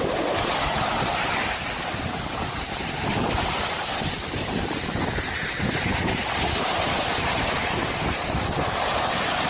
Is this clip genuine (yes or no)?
no